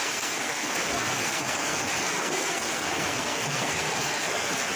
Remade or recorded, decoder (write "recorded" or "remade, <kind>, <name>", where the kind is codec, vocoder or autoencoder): remade, codec, SNAC